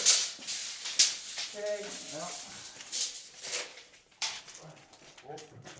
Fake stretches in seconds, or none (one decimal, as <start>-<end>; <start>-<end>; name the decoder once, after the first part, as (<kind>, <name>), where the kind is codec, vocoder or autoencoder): 3.7-4.4 (vocoder, BigVGAN v2)